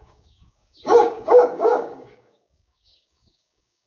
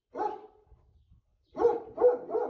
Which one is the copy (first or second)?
first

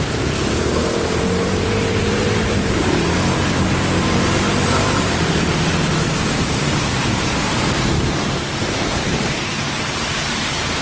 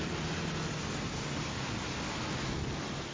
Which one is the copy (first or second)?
first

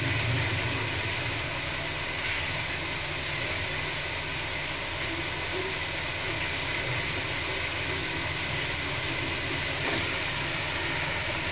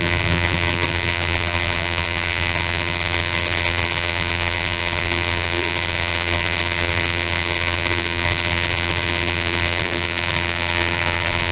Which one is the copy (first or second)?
second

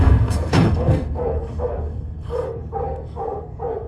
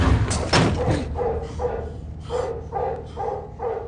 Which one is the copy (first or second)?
first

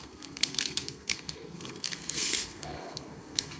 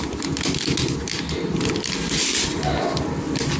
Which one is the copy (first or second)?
first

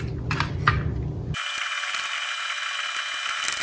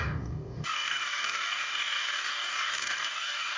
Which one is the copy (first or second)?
second